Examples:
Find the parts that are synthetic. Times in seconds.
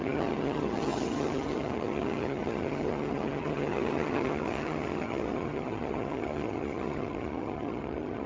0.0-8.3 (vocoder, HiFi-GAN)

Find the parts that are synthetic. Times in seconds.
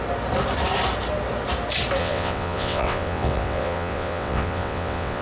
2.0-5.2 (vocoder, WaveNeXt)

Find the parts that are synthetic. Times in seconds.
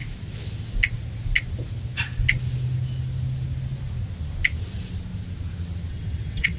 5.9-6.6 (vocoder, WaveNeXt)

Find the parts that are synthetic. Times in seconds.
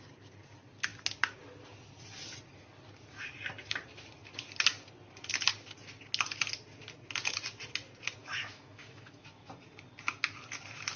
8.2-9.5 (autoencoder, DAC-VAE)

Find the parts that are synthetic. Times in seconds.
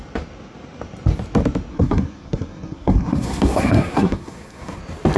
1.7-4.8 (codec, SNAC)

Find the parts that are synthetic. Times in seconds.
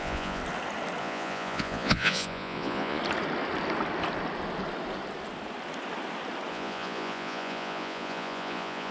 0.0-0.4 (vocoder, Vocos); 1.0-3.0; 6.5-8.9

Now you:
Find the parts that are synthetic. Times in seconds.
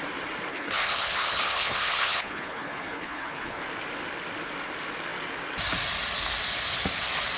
0.5-3.6 (codec, HILCodec)